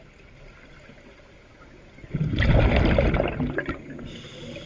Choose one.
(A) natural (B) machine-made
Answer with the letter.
A